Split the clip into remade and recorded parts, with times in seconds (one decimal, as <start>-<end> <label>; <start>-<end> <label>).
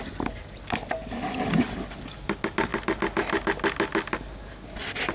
0.0-5.1 recorded